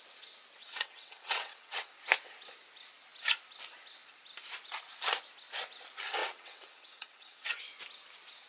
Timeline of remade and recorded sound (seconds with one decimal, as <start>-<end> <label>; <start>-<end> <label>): 0.0-0.6 recorded; 0.6-1.9 remade; 1.9-6.2 recorded; 6.2-7.6 remade; 7.6-8.5 recorded